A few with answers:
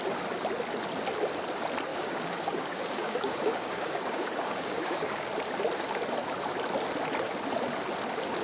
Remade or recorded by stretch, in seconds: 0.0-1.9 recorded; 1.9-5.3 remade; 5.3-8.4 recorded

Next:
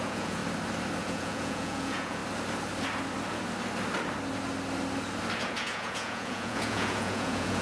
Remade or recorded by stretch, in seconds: 0.0-0.4 remade; 0.4-1.0 recorded; 1.0-2.2 remade; 2.2-5.4 recorded; 5.4-7.6 remade

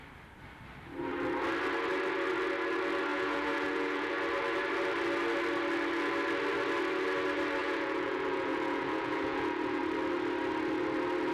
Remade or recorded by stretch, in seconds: 0.0-3.1 recorded; 3.1-4.1 remade; 4.1-7.6 recorded; 7.6-9.8 remade; 9.8-11.3 recorded

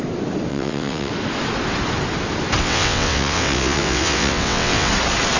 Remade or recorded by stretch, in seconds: 0.0-0.5 recorded; 0.5-1.1 remade; 1.1-2.6 recorded; 2.6-4.9 remade; 4.9-5.4 recorded